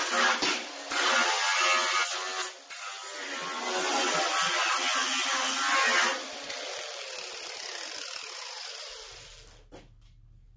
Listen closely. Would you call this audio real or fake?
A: real